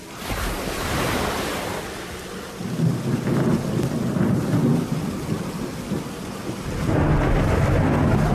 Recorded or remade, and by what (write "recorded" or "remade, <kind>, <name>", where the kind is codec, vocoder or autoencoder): recorded